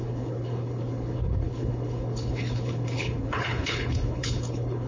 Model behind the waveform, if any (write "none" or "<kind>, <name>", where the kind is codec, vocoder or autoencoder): codec, HILCodec